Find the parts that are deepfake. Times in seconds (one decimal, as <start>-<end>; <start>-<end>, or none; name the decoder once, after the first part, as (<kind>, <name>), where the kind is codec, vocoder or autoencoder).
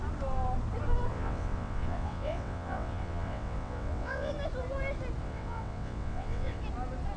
1.1-4.3 (vocoder, WaveNeXt); 5.2-6.6